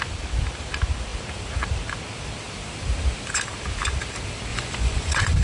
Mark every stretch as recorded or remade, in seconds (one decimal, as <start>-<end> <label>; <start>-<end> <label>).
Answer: 0.0-4.5 recorded; 4.5-5.4 remade